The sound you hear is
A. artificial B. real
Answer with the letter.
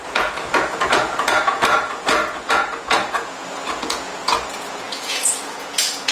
A